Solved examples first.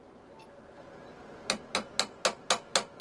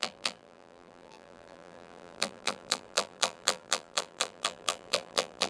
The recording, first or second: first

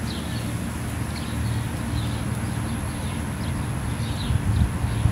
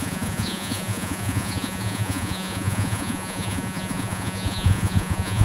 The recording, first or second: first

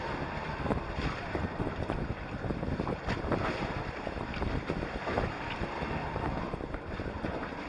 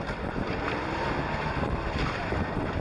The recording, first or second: second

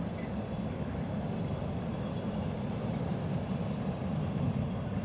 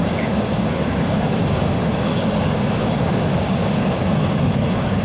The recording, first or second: first